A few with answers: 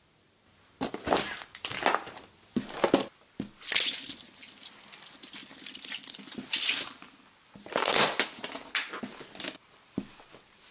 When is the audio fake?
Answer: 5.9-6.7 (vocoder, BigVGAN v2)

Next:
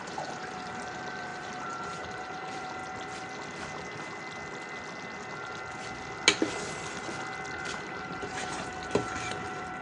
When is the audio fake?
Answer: 0.0-2.8 (vocoder, BigVGAN v2); 7.7-9.8

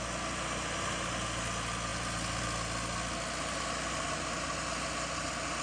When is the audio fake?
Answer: none